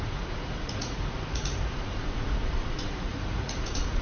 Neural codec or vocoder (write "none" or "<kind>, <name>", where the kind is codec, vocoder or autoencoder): vocoder, Vocos